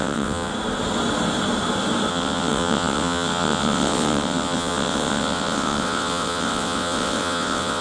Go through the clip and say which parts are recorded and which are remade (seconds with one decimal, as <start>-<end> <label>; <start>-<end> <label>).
0.0-0.5 remade; 0.5-2.1 recorded; 2.1-7.8 remade

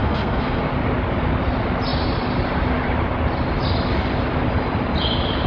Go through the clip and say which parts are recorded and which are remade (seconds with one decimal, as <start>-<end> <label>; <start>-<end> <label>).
0.0-0.6 remade; 0.6-5.5 recorded

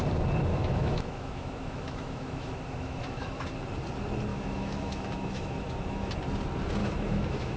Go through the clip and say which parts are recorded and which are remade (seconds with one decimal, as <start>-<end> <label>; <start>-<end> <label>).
0.0-0.5 recorded; 0.5-3.4 remade; 3.4-4.3 recorded; 4.3-6.1 remade; 6.1-6.8 recorded; 6.8-7.6 remade

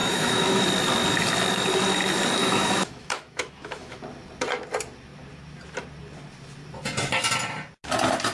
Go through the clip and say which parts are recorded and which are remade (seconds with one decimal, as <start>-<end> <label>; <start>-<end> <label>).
0.0-0.6 remade; 0.6-2.4 recorded; 2.4-4.0 remade; 4.0-8.3 recorded